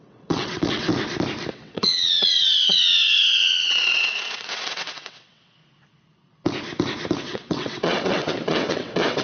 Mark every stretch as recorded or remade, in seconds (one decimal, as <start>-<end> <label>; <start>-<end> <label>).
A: 0.0-0.9 remade; 0.9-1.5 recorded; 1.5-5.6 remade; 5.6-7.2 recorded; 7.2-9.2 remade